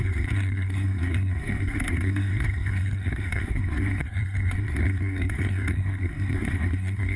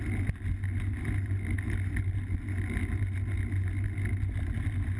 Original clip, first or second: second